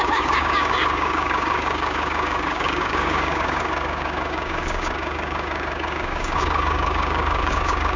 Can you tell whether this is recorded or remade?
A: remade